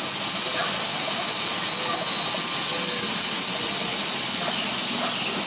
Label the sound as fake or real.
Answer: real